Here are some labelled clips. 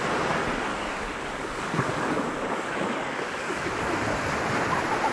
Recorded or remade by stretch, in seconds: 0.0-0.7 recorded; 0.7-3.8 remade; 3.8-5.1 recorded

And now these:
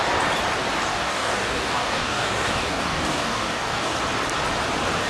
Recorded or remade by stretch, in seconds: 0.0-0.9 recorded; 0.9-4.0 remade; 4.0-5.1 recorded